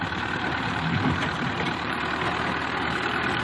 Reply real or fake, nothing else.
fake